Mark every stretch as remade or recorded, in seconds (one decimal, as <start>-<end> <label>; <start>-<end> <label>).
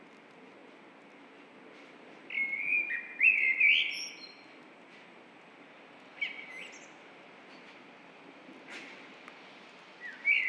0.0-10.5 recorded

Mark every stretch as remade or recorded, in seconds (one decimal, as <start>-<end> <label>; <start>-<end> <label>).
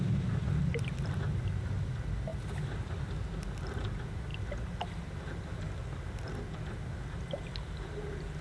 0.0-8.4 recorded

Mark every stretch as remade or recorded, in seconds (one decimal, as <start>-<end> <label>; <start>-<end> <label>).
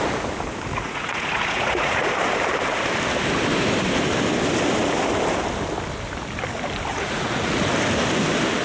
0.0-0.7 recorded; 0.7-2.1 remade; 2.1-6.9 recorded; 6.9-7.6 remade; 7.6-8.6 recorded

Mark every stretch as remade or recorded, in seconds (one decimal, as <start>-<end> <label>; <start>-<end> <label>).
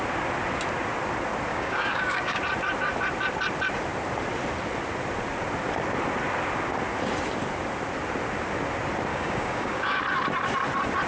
0.0-1.5 recorded; 1.5-2.4 remade; 2.4-9.1 recorded; 9.1-10.0 remade; 10.0-11.1 recorded